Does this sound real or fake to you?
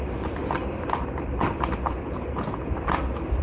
real